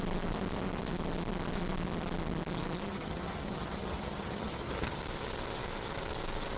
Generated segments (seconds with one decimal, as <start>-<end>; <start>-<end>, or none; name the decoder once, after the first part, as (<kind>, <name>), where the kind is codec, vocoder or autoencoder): 2.9-5.0 (vocoder, HiFi-GAN)